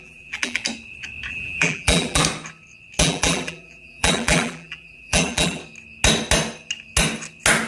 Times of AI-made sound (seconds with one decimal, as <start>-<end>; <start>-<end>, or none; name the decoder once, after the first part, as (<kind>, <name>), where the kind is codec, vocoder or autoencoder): 0.0-0.6 (vocoder, BigVGAN v2); 1.3-2.2; 3.0-5.6